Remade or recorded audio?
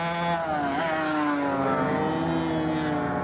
recorded